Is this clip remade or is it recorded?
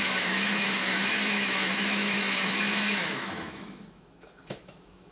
remade